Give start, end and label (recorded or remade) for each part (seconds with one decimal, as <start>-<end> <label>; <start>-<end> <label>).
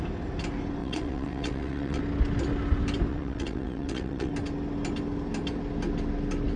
0.0-0.8 recorded; 0.8-2.0 remade; 2.0-3.1 recorded; 3.1-4.3 remade; 4.3-6.6 recorded